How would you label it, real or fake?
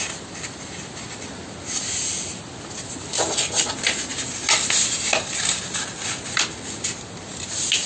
real